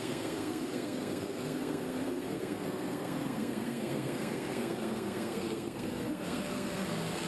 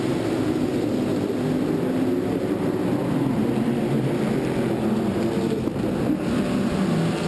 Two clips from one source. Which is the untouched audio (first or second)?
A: second